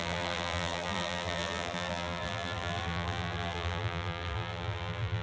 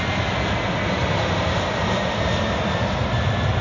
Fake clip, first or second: first